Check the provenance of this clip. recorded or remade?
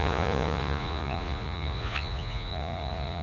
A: remade